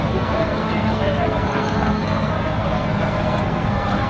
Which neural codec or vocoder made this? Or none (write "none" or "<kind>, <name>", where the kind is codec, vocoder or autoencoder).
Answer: codec, SNAC